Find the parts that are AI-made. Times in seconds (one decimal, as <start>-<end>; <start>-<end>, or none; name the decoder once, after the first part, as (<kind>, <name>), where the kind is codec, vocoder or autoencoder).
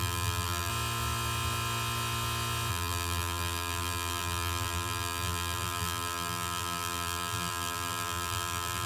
0.0-0.7 (vocoder, BigVGAN v2); 2.7-8.9